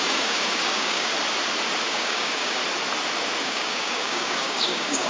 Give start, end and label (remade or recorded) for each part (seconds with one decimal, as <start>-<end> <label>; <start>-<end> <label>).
0.0-1.1 remade; 1.1-1.9 recorded; 1.9-2.6 remade; 2.6-3.4 recorded; 3.4-5.1 remade